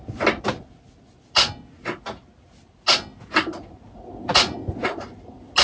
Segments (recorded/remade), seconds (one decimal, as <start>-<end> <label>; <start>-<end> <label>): 0.0-5.6 recorded